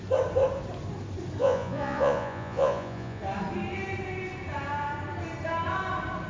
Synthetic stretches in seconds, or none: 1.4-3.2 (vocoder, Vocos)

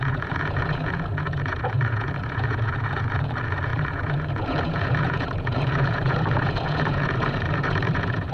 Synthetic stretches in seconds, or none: 0.0-8.3 (vocoder, Vocos)